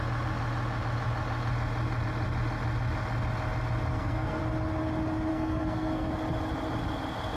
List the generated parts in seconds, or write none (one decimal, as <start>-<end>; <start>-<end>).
3.9-4.4; 5.3-6.1